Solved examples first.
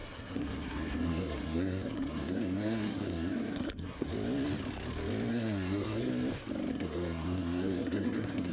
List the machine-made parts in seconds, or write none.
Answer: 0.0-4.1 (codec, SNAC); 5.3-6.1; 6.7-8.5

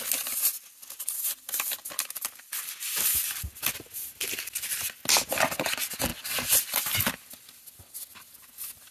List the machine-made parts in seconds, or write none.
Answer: none

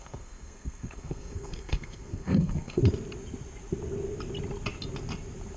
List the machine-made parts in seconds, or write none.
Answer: 0.0-2.8 (codec, SNAC)

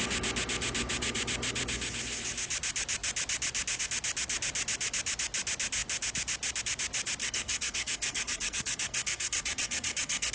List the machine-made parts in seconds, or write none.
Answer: 7.2-10.3 (codec, SNAC)

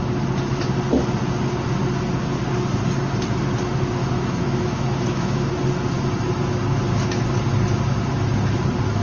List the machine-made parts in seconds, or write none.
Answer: 4.0-5.6 (autoencoder, DAC-VAE)

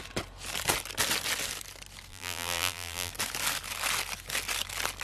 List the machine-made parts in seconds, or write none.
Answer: 2.1-3.1 (vocoder, BigVGAN v2)

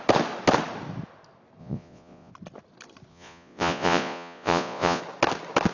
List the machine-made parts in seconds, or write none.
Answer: 1.6-2.3 (vocoder, Vocos); 3.1-5.0

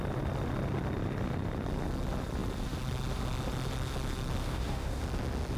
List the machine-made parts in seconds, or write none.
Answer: 4.4-5.0 (codec, DAC)